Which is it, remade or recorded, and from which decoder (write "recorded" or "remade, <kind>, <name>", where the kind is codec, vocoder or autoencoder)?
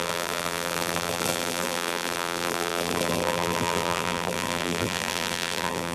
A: remade, vocoder, BigVGAN v2